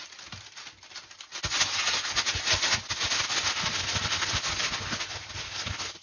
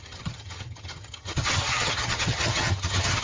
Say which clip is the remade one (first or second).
second